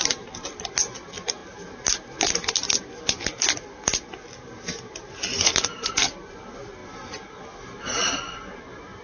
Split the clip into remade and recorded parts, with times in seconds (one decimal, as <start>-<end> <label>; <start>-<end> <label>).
0.0-9.0 recorded